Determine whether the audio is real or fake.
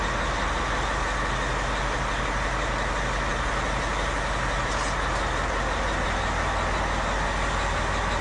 real